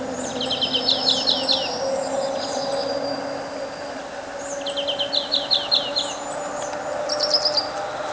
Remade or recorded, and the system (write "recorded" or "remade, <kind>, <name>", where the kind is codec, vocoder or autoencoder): recorded